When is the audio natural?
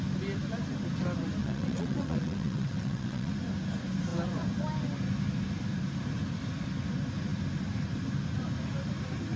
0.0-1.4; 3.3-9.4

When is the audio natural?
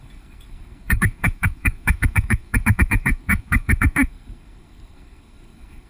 none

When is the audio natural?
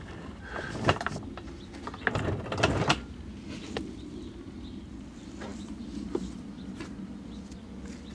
0.0-8.1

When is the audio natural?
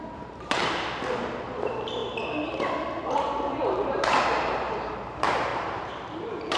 0.6-1.2; 2.0-3.6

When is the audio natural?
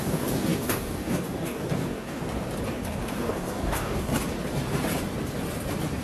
2.2-2.7; 4.1-6.0